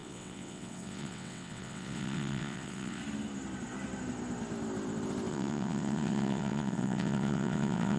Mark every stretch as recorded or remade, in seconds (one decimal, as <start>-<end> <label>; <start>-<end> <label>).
0.0-3.0 remade; 3.0-5.3 recorded; 5.3-8.0 remade